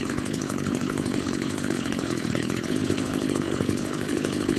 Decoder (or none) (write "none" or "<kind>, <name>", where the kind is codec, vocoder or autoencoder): codec, HILCodec